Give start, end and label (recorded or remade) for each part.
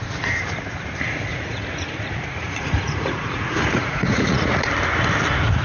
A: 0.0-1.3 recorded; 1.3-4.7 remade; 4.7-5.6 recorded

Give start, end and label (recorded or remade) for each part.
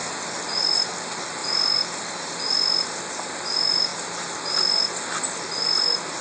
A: 0.0-6.2 recorded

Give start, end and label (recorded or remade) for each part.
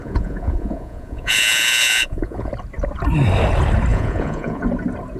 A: 0.0-2.5 remade; 2.5-3.9 recorded; 3.9-4.6 remade; 4.6-5.2 recorded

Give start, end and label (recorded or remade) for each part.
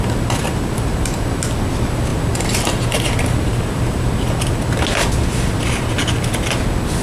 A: 0.0-2.1 recorded; 2.1-4.2 remade; 4.2-7.0 recorded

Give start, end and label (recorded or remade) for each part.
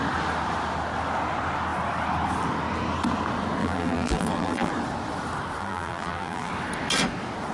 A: 0.0-3.6 recorded; 3.6-4.7 remade; 4.7-5.6 recorded; 5.6-6.5 remade; 6.5-7.5 recorded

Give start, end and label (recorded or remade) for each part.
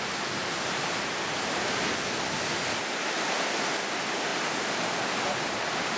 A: 0.0-6.0 recorded